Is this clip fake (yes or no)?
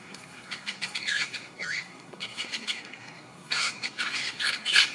yes